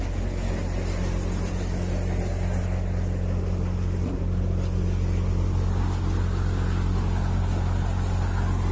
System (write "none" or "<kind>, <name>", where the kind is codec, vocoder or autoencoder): none